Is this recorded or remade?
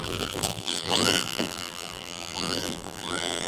remade